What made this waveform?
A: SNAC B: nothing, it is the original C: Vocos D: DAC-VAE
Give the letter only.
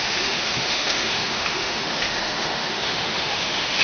D